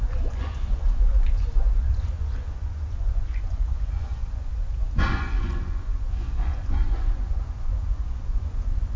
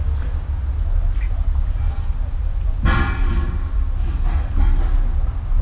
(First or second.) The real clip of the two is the second